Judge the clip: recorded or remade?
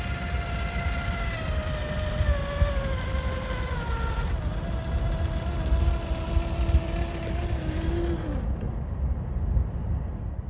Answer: recorded